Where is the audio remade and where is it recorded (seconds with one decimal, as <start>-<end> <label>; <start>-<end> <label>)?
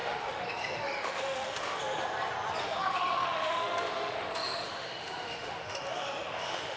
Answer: 0.0-1.8 remade; 1.8-2.6 recorded; 2.6-6.8 remade